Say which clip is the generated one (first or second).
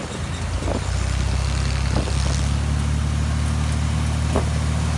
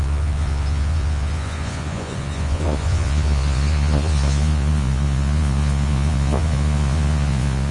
second